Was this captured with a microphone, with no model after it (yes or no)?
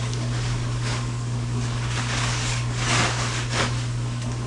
no